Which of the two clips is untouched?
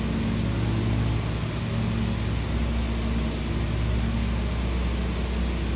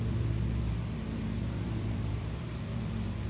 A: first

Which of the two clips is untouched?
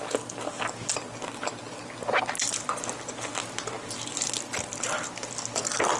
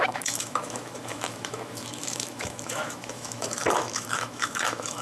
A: first